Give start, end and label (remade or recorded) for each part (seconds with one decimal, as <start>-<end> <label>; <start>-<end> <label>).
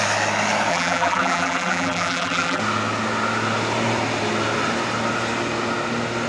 0.0-0.7 recorded; 0.7-2.6 remade; 2.6-6.3 recorded